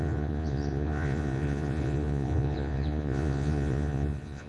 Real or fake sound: fake